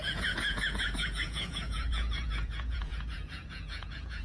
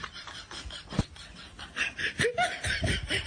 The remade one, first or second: first